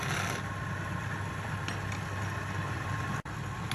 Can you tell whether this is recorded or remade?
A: recorded